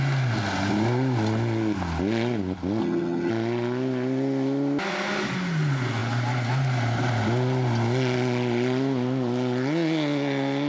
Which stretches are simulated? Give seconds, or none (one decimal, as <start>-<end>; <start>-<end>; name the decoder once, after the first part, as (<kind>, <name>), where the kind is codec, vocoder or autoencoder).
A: 2.8-3.3 (vocoder, HiFi-GAN)